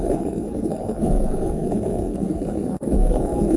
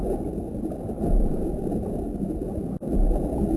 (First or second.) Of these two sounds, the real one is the second